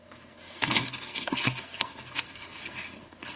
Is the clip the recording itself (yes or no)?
no